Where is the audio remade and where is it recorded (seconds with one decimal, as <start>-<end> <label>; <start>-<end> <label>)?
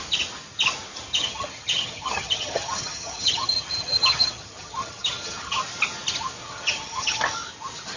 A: 0.0-1.1 recorded; 1.1-5.6 remade; 5.6-6.4 recorded; 6.4-7.2 remade; 7.2-8.0 recorded